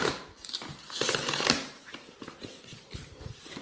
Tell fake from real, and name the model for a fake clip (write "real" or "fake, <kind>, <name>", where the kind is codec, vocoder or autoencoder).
fake, vocoder, BigVGAN v2